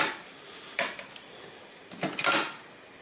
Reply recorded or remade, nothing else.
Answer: recorded